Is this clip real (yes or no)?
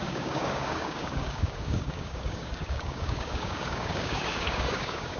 no